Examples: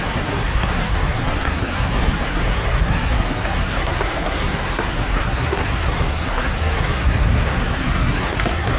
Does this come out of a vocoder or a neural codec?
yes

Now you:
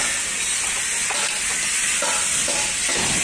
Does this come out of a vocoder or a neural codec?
no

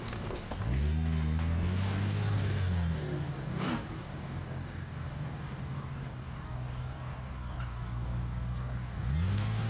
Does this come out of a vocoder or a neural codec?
yes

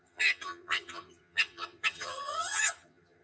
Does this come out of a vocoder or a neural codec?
yes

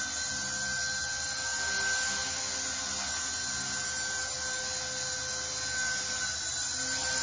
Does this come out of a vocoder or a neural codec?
no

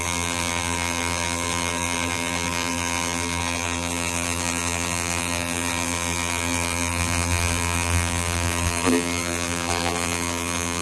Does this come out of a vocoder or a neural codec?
yes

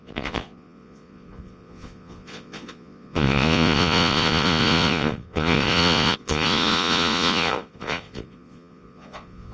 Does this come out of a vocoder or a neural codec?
yes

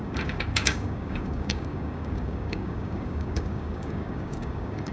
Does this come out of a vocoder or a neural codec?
yes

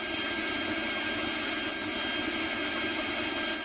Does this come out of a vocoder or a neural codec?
no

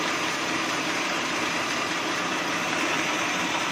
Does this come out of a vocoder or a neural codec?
yes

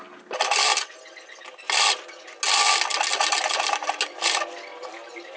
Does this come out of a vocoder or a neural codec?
no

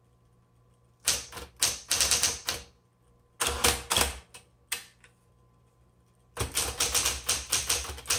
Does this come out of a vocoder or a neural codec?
no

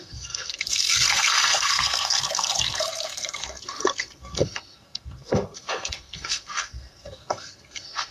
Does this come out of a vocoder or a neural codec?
yes